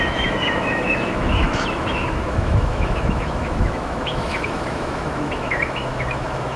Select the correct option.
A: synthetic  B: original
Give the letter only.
A